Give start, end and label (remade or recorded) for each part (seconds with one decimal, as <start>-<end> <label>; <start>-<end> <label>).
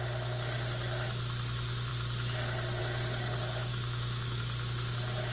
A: 0.0-3.7 recorded; 3.7-4.4 remade; 4.4-5.3 recorded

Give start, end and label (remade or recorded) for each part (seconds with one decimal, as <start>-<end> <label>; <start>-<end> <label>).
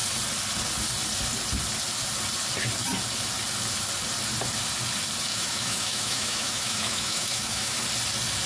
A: 0.0-5.3 recorded; 5.3-7.8 remade; 7.8-8.5 recorded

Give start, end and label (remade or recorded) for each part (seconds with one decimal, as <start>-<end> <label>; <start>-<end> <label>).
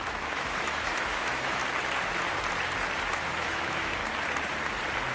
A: 0.0-1.6 remade; 1.6-3.2 recorded; 3.2-4.0 remade; 4.0-5.1 recorded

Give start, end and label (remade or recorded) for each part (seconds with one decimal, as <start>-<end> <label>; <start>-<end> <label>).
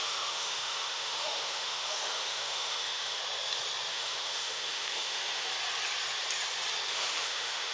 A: 0.0-3.2 remade; 3.2-3.9 recorded; 3.9-5.5 remade; 5.5-6.9 recorded; 6.9-7.7 remade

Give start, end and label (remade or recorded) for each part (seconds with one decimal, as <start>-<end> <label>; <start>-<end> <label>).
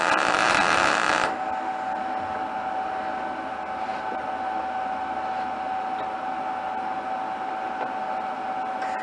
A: 0.0-9.0 recorded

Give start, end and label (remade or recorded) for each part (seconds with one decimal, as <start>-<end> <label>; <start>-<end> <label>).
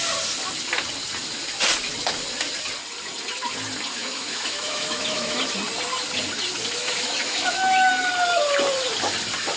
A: 0.0-4.0 recorded; 4.0-5.4 remade; 5.4-6.8 recorded; 6.8-7.9 remade; 7.9-9.6 recorded